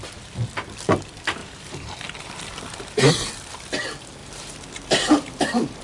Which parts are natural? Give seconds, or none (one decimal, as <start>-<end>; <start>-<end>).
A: 0.0-1.4; 3.1-4.2